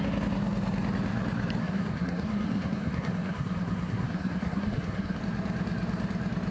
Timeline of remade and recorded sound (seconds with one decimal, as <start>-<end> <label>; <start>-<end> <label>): 0.0-1.6 recorded; 1.6-5.2 remade; 5.2-6.5 recorded